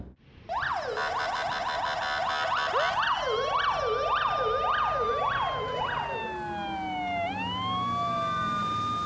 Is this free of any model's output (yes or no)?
yes